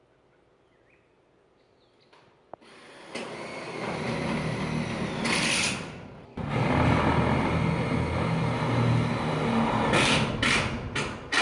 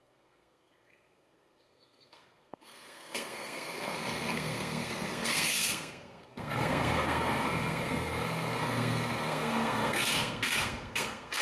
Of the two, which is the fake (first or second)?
second